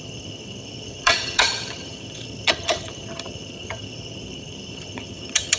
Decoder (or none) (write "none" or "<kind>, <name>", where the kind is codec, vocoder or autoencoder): vocoder, HiFi-GAN